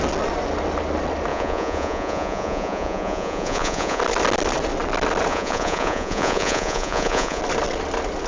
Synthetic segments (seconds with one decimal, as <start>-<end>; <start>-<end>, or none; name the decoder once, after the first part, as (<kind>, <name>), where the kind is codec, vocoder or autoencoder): 1.3-4.0 (vocoder, Vocos); 5.3-7.4